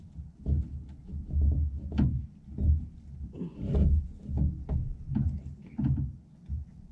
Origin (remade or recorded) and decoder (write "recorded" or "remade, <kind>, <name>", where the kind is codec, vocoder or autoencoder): recorded